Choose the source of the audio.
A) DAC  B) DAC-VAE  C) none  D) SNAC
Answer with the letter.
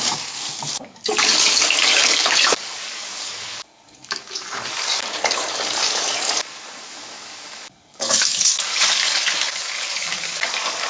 A